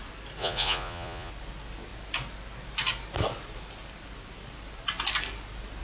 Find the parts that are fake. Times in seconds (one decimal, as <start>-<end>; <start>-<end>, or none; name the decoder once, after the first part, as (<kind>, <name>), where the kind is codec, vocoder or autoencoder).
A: 0.4-1.3 (vocoder, Vocos)